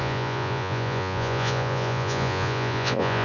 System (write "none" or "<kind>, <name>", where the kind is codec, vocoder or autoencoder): vocoder, Vocos